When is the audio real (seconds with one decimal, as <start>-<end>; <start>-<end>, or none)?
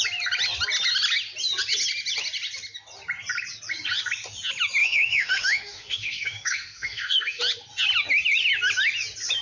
0.0-4.8; 7.4-9.4